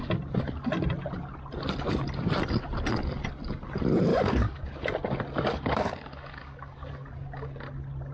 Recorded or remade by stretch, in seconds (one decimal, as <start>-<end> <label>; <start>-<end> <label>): 0.0-4.1 recorded; 4.1-4.6 remade; 4.6-5.5 recorded; 5.5-6.9 remade; 6.9-8.1 recorded